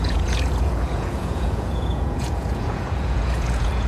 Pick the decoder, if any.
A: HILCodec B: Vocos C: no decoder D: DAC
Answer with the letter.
B